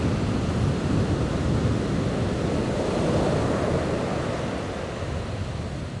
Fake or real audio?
real